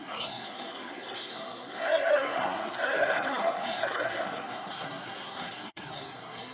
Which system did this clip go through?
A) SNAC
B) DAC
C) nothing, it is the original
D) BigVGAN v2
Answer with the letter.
A